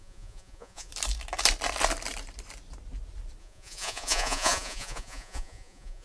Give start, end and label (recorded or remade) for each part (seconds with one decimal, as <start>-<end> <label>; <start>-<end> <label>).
0.0-0.9 remade; 0.9-3.4 recorded; 3.4-6.0 remade